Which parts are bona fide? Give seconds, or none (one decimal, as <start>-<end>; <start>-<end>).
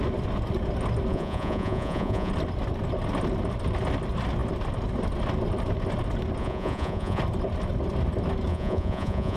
0.0-1.1; 2.3-6.4; 7.2-8.5